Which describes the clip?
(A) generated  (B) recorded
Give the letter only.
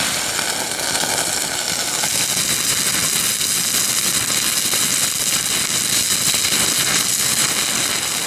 B